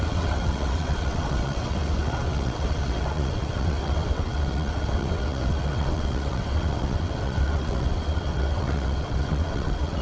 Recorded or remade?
remade